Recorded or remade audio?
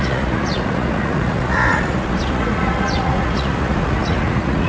remade